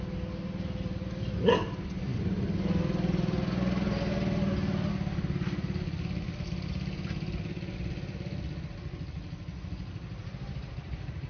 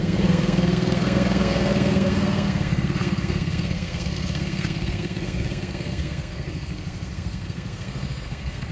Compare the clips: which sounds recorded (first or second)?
first